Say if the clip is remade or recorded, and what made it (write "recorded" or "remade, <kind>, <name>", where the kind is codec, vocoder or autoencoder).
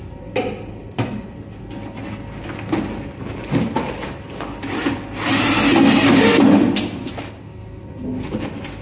recorded